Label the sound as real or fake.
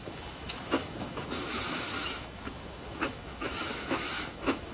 fake